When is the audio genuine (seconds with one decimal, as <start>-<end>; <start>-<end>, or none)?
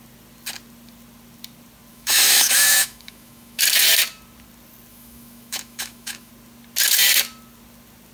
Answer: 0.0-1.9; 3.6-4.9; 6.3-8.1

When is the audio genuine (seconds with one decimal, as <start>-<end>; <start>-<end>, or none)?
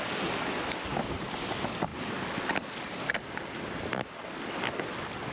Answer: 0.0-5.3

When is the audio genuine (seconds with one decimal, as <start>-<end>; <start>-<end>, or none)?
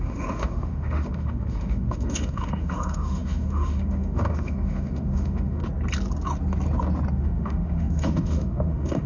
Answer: 5.6-7.1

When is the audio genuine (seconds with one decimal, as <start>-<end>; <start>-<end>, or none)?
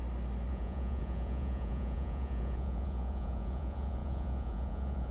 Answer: 0.0-0.5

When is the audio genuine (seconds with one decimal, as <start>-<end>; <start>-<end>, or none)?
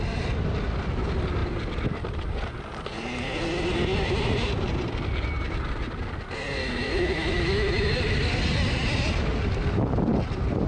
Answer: 0.0-6.6; 8.0-10.7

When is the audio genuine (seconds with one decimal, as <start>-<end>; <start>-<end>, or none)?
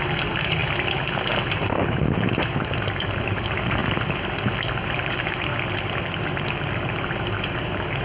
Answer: 0.6-1.6; 3.8-4.7; 5.5-6.8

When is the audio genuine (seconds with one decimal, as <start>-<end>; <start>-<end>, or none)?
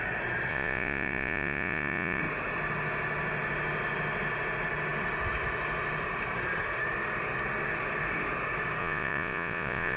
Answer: 0.0-0.5; 2.2-8.8